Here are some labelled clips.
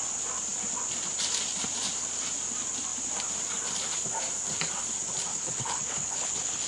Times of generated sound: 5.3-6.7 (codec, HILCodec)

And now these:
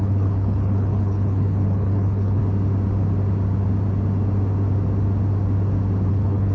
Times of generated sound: 0.0-2.4 (codec, HILCodec); 6.1-6.5

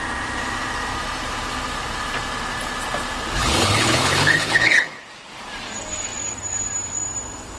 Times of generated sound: 3.4-5.1 (codec, HILCodec)

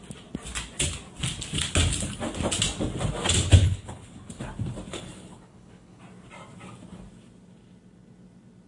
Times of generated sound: 3.6-4.4 (codec, HILCodec); 4.9-6.0

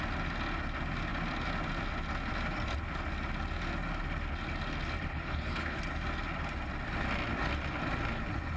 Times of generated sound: 5.1-5.8 (codec, HILCodec)

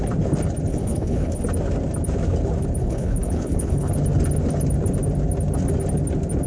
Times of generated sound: 0.7-1.4 (codec, HILCodec); 2.8-3.9

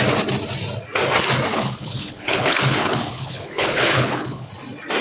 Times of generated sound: 1.5-4.5 (codec, HILCodec)

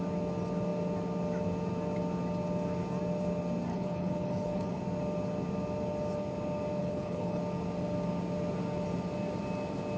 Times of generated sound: 3.7-4.8 (codec, HILCodec); 6.8-7.4